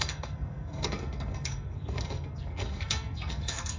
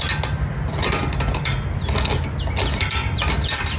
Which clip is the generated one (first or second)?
first